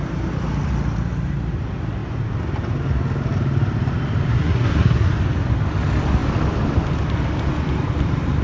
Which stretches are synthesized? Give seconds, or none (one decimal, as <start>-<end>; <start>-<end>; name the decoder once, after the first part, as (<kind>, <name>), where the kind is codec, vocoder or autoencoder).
4.3-5.1 (codec, SNAC)